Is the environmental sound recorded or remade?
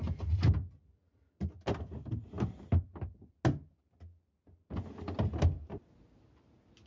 recorded